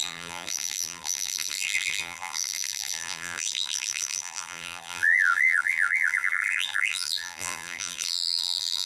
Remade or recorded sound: remade